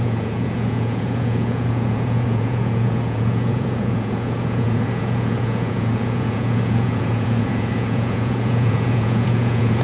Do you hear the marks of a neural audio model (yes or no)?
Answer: yes